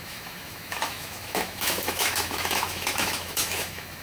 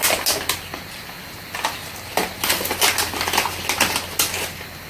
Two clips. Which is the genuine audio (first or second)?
second